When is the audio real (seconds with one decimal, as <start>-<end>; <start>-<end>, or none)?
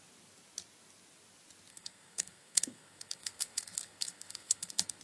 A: 0.0-1.7